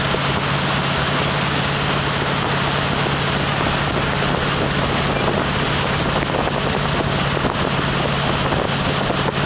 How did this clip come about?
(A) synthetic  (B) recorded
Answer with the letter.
B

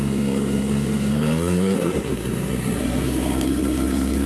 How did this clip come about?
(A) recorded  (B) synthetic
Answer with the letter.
B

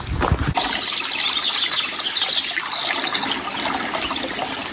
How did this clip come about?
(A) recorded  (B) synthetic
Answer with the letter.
A